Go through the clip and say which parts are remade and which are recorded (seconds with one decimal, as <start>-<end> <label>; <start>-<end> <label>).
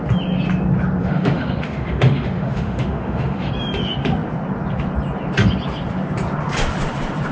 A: 0.0-1.0 recorded; 1.0-3.5 remade; 3.5-7.3 recorded